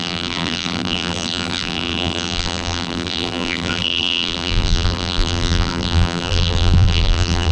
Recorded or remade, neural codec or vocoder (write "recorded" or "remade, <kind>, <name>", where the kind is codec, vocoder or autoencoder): remade, vocoder, BigVGAN v2